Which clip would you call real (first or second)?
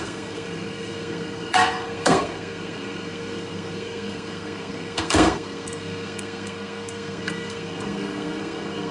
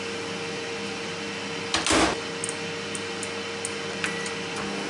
second